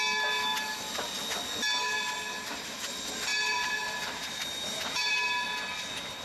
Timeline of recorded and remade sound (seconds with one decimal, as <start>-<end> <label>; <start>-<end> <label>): 0.0-3.3 recorded; 3.3-5.1 remade; 5.1-6.2 recorded